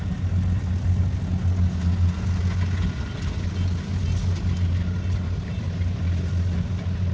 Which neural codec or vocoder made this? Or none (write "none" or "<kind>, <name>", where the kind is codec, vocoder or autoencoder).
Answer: none